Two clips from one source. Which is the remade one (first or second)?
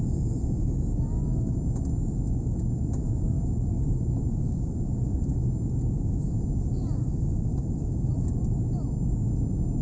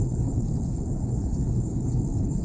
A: second